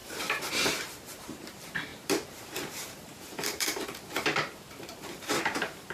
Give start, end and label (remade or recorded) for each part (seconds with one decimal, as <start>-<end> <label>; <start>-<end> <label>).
0.0-5.9 remade